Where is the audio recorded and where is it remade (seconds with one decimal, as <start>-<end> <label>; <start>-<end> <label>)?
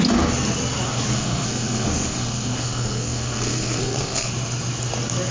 0.0-1.1 recorded; 1.1-4.3 remade; 4.3-5.3 recorded